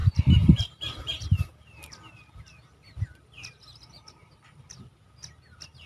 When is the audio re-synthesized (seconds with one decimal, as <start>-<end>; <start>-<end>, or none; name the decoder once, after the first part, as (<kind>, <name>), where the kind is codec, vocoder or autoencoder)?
0.0-3.5 (vocoder, BigVGAN v2)